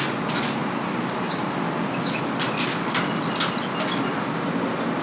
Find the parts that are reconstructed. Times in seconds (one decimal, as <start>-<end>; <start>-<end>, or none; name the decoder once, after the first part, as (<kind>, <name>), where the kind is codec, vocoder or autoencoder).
0.6-3.6 (vocoder, BigVGAN v2)